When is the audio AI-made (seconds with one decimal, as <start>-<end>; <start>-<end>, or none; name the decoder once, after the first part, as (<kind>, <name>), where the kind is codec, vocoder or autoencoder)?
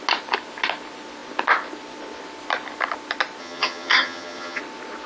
3.4-4.6 (vocoder, HiFi-GAN)